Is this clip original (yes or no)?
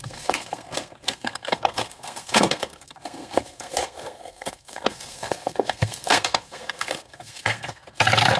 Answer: no